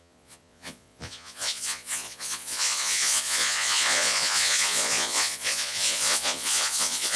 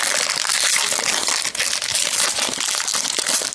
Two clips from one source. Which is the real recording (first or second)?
second